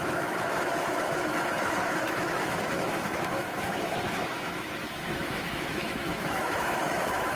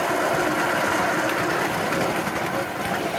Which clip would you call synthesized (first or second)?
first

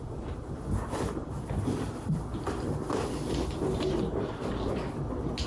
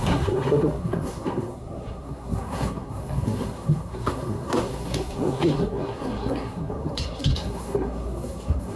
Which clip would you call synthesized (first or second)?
second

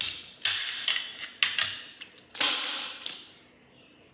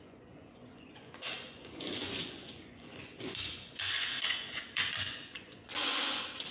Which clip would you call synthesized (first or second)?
second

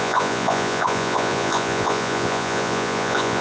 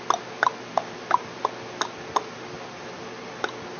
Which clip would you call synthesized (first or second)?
first